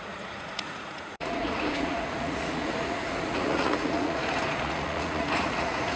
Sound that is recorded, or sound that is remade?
remade